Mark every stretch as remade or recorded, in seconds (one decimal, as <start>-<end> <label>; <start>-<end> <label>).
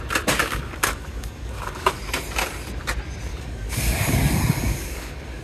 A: 0.0-0.4 recorded; 0.4-2.0 remade; 2.0-3.3 recorded; 3.3-5.4 remade